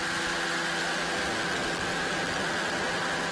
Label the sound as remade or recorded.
recorded